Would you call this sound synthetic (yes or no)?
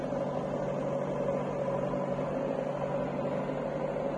no